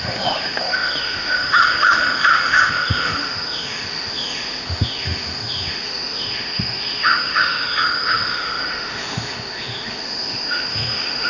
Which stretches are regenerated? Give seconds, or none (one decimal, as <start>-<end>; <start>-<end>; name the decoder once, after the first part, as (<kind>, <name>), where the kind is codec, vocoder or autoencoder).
0.0-11.3 (autoencoder, DAC-VAE)